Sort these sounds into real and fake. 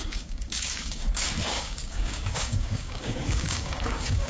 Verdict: fake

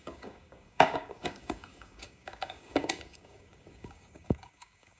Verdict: fake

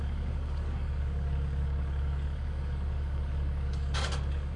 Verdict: fake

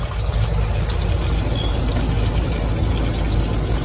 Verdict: real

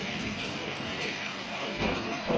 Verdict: fake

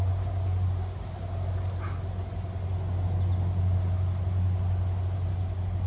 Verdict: real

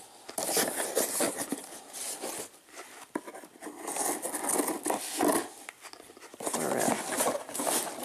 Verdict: real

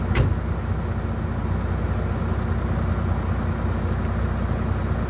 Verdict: real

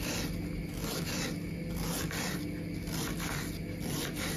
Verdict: real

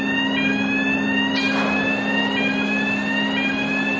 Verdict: real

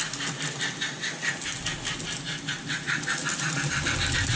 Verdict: real